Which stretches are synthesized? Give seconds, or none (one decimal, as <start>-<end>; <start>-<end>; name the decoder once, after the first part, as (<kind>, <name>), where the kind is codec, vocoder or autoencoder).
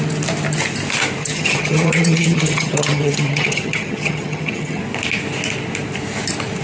1.2-4.8 (vocoder, HiFi-GAN)